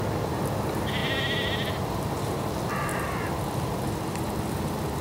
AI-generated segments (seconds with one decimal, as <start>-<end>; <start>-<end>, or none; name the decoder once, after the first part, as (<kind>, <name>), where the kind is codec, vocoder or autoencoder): 1.0-2.4 (vocoder, BigVGAN v2); 2.9-4.6

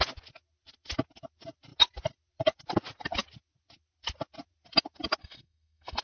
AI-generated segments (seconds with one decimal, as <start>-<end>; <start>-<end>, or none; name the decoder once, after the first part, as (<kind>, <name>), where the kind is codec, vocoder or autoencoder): 5.2-6.0 (codec, SNAC)

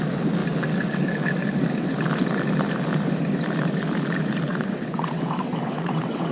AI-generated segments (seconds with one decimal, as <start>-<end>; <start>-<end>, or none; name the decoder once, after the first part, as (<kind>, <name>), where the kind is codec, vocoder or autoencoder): 4.5-6.3 (vocoder, WaveNeXt)

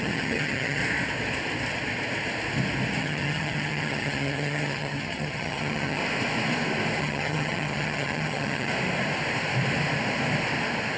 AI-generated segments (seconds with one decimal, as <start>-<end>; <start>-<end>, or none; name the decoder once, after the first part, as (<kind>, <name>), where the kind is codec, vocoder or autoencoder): 0.0-0.8 (vocoder, HiFi-GAN); 3.0-6.0; 7.0-8.7